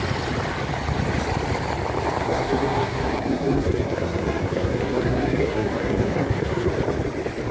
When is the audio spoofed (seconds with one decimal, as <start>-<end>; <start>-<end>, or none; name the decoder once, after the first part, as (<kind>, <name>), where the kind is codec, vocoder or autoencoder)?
2.2-6.7 (codec, SNAC)